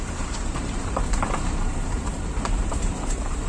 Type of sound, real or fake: fake